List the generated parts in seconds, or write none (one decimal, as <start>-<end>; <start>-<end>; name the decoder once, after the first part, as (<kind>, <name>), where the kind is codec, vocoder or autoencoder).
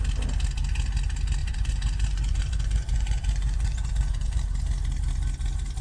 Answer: 1.4-4.4 (vocoder, Vocos)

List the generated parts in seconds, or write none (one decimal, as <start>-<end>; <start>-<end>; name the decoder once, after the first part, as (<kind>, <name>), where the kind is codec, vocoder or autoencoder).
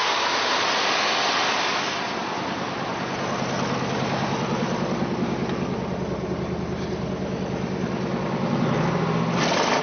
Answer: none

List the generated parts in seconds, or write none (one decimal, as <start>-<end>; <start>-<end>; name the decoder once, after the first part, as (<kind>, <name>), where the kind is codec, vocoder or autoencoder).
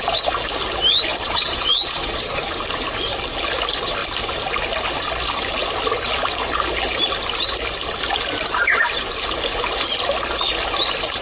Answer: 1.1-2.4 (vocoder, Vocos)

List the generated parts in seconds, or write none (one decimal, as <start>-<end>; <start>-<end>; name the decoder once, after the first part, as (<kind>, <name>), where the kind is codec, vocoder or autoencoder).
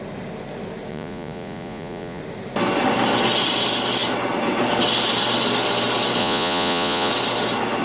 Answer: 0.9-2.2 (vocoder, Vocos); 6.2-7.1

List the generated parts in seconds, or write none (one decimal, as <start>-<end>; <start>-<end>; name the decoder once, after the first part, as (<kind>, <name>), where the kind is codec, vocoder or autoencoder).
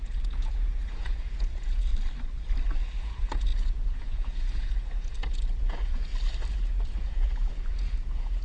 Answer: 0.0-1.9 (vocoder, Vocos); 3.0-6.1; 6.6-8.4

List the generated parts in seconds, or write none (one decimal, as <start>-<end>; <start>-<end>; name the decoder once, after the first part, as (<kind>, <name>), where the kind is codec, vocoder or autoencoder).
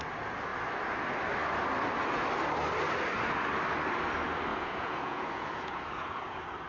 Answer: 4.5-6.2 (vocoder, Vocos)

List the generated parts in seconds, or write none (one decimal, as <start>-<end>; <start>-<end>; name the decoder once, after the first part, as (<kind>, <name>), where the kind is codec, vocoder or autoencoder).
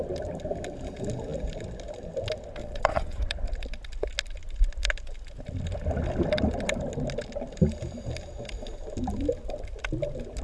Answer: 2.6-3.2 (vocoder, Vocos)